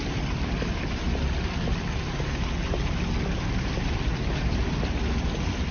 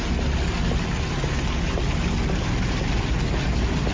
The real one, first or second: second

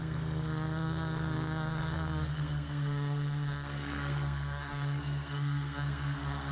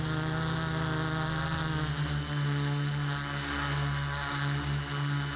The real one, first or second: second